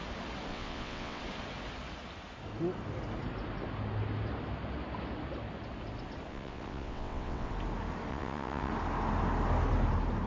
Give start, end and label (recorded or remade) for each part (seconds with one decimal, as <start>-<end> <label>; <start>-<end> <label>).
0.0-0.5 recorded; 0.5-1.2 remade; 1.2-6.3 recorded; 6.3-7.5 remade; 7.5-8.1 recorded; 8.1-8.7 remade; 8.7-10.3 recorded